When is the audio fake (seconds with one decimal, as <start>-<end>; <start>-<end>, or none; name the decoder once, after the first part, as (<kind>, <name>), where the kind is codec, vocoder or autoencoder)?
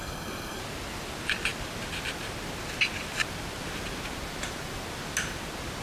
0.0-0.6 (codec, SNAC)